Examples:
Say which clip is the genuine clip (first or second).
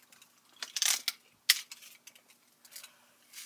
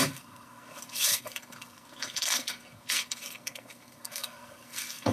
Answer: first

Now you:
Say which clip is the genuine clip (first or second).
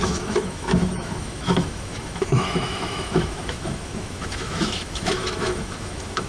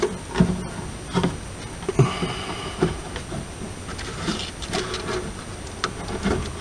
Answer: second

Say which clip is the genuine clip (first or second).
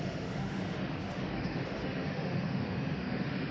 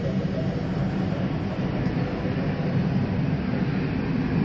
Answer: second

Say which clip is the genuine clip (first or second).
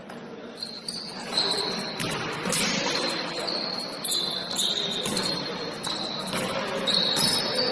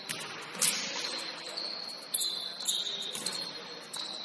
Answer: second